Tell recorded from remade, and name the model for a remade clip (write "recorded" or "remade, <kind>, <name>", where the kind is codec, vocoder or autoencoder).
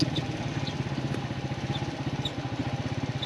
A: recorded